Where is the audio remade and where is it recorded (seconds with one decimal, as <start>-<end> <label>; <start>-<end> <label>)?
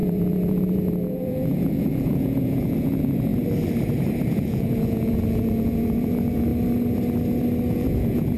0.0-3.3 remade; 3.3-4.3 recorded; 4.3-6.5 remade; 6.5-7.7 recorded; 7.7-8.4 remade